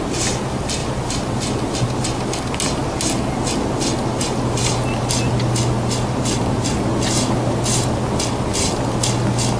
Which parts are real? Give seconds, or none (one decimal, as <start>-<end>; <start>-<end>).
0.0-9.6

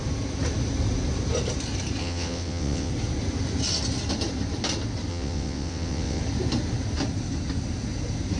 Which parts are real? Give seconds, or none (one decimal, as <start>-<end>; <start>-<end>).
0.0-2.0; 2.9-5.1; 6.2-8.4

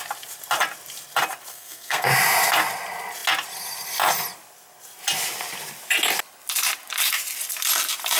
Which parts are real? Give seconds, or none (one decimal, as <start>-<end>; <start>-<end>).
0.0-1.5; 2.1-8.2

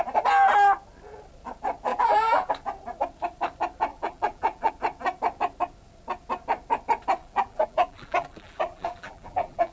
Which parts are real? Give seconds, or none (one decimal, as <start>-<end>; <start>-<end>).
0.0-1.9; 2.5-3.9; 4.7-7.2

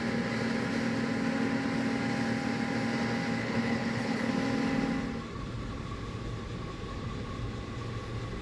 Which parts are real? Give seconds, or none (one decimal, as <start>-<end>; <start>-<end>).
0.0-3.4; 4.3-8.4

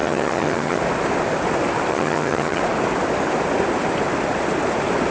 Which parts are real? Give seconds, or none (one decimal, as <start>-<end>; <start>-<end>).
0.8-1.9; 2.6-5.1